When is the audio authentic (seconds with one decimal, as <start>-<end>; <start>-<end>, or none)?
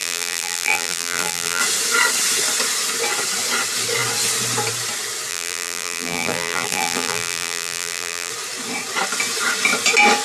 1.6-5.3; 8.3-10.2